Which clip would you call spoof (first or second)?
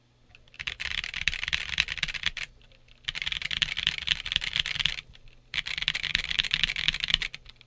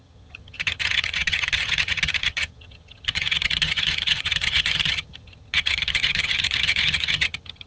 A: second